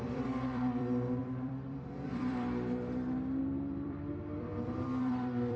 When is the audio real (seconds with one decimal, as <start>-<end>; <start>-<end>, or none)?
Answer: none